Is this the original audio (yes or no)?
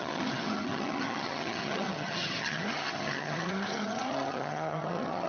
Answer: no